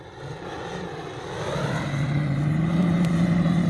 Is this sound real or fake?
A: real